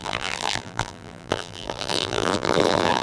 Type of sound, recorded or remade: remade